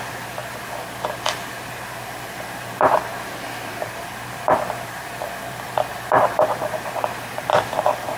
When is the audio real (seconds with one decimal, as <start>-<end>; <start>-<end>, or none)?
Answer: 0.4-1.2; 5.9-6.6